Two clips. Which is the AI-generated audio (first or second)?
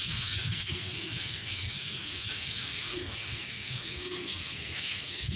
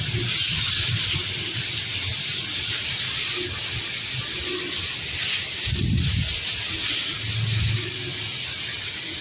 first